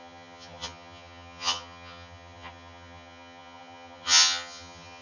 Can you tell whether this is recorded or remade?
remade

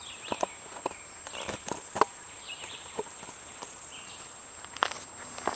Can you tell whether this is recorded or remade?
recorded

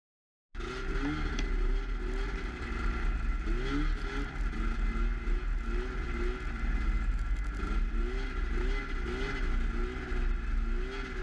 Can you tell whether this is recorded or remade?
recorded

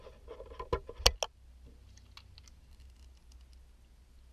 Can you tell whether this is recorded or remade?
recorded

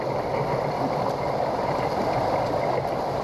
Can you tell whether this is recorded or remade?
recorded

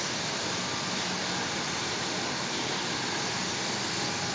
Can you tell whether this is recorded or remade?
recorded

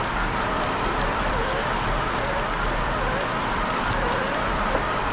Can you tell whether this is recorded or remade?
recorded